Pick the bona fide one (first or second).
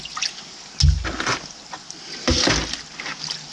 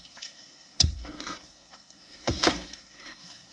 first